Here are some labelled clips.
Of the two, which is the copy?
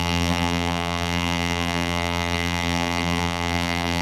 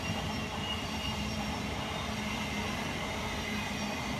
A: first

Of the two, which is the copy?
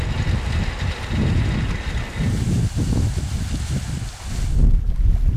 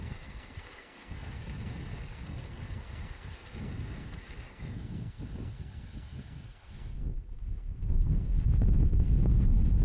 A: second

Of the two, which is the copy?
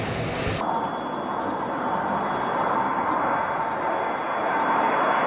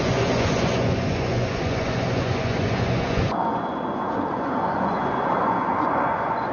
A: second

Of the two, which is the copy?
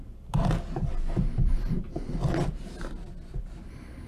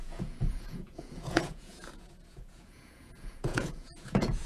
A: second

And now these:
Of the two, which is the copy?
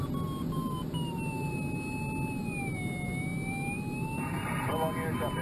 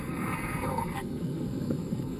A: second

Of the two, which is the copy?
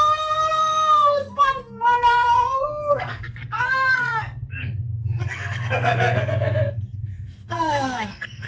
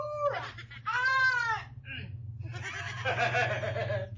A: first